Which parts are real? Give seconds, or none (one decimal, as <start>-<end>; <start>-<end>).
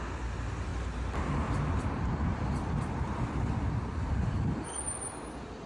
0.0-5.7